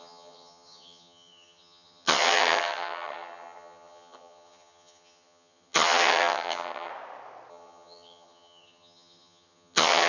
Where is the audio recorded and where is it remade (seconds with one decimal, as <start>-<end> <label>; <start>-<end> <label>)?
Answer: 0.0-6.9 remade; 6.9-7.5 recorded; 7.5-10.1 remade